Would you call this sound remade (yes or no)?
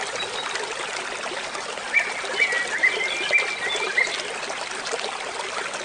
no